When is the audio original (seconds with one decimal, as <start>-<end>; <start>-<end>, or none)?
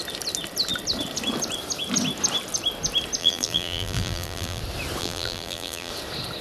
0.0-3.2; 4.6-5.0; 5.9-6.4